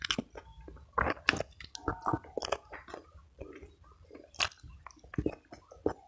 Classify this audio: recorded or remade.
recorded